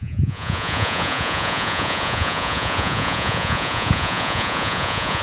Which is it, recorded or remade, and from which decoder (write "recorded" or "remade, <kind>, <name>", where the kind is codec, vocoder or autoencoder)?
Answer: remade, vocoder, Vocos